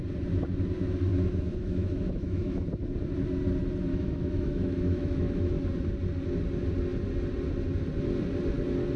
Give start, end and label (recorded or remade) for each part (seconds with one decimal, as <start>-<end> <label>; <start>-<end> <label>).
0.0-1.1 recorded; 1.1-2.7 remade; 2.7-3.9 recorded; 3.9-5.6 remade; 5.6-9.0 recorded